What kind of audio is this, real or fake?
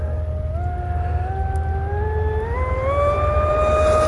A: real